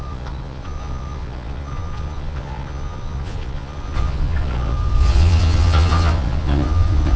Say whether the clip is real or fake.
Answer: fake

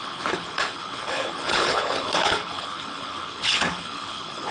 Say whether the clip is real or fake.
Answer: fake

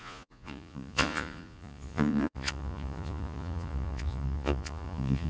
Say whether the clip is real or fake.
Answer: fake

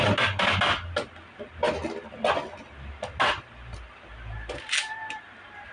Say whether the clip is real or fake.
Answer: real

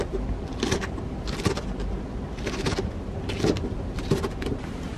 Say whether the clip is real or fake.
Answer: real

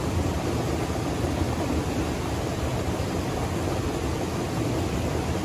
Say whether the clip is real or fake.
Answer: real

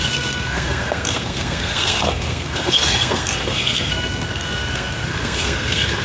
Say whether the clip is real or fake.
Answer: fake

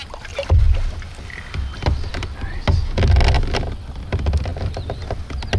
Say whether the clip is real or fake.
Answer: real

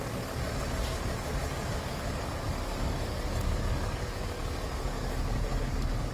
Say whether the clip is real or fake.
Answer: fake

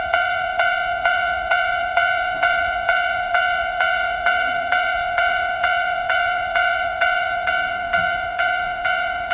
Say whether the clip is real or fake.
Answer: fake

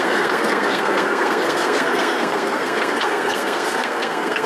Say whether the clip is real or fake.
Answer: fake